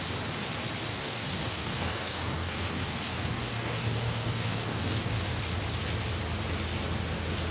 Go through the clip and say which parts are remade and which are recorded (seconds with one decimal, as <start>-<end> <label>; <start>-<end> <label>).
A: 0.0-0.9 recorded; 0.9-5.4 remade; 5.4-7.5 recorded